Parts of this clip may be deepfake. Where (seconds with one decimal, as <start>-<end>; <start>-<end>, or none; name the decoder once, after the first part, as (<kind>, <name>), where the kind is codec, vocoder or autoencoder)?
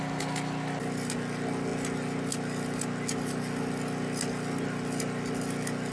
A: none